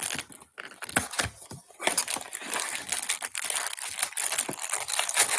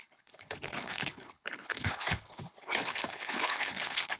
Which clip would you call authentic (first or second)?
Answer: first